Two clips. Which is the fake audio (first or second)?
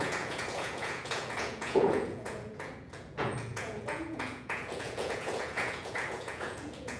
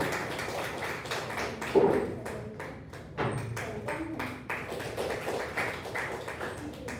first